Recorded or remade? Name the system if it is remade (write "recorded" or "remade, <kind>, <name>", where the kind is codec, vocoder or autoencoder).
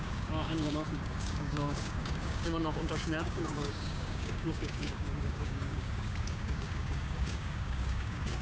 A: remade, codec, DAC